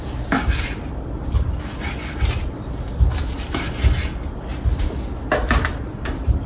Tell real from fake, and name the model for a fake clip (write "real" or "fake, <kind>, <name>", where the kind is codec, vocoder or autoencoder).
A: real